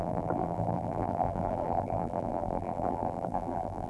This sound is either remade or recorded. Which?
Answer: remade